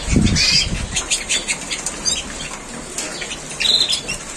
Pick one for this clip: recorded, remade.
recorded